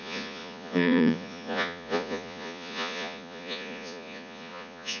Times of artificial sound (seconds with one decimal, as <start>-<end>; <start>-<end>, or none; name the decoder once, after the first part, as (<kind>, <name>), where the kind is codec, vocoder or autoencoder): 0.0-5.0 (vocoder, Vocos)